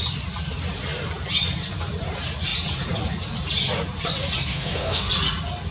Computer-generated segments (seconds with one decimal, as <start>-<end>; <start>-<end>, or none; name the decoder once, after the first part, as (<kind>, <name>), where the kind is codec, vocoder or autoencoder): 4.5-5.1 (autoencoder, DAC-VAE)

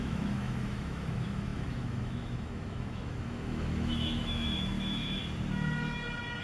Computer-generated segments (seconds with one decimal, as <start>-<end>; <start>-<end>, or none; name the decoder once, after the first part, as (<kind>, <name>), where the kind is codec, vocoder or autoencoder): 0.0-5.2 (autoencoder, DAC-VAE)

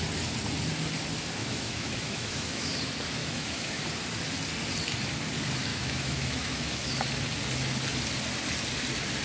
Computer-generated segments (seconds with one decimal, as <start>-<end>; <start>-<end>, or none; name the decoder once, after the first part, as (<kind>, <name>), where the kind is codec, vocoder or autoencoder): 1.4-2.7 (autoencoder, DAC-VAE); 3.2-3.8; 5.7-6.7

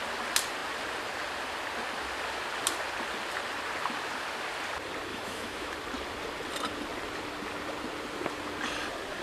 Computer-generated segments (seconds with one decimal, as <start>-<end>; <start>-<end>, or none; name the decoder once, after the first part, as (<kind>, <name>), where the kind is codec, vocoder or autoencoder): 5.1-5.7 (autoencoder, DAC-VAE)

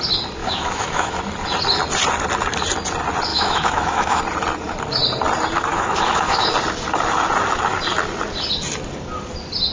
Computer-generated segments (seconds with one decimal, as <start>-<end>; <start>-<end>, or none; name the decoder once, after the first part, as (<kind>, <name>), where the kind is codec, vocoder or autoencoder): 0.4-1.2 (autoencoder, DAC-VAE); 3.3-4.2; 5.7-6.5